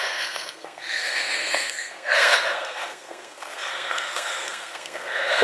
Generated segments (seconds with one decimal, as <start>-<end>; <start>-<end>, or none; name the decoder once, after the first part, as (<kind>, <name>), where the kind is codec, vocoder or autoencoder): 0.0-5.4 (codec, SNAC)